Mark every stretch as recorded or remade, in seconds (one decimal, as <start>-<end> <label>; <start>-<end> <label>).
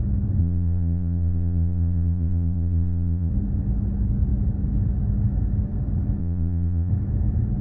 0.0-0.4 recorded; 0.4-3.3 remade; 3.3-6.2 recorded; 6.2-6.9 remade; 6.9-7.6 recorded